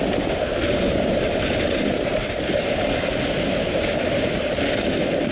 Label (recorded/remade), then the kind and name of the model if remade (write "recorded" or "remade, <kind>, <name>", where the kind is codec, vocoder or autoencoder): recorded